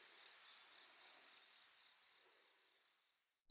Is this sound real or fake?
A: real